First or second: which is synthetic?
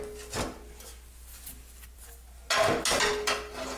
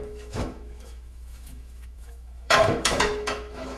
second